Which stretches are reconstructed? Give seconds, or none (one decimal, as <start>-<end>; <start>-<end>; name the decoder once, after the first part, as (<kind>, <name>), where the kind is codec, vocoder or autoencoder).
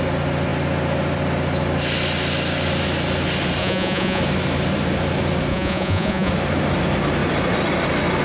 3.6-4.2 (vocoder, Vocos); 5.5-6.3